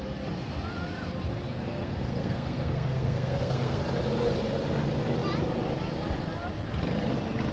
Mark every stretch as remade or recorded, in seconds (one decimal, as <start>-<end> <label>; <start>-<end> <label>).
0.0-1.5 recorded; 1.5-3.8 remade; 3.8-7.5 recorded